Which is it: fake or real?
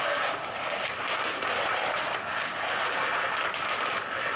real